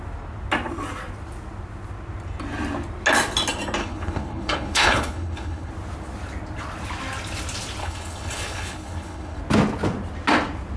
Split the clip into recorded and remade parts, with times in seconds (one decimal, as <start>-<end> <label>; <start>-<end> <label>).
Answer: 0.0-3.8 recorded; 3.8-5.7 remade; 5.7-7.8 recorded; 7.8-9.4 remade; 9.4-10.8 recorded